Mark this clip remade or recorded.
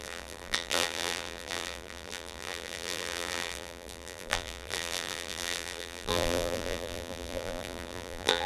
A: remade